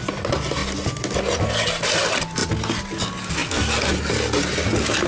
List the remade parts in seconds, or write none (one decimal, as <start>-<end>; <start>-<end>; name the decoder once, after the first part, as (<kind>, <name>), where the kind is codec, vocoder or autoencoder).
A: none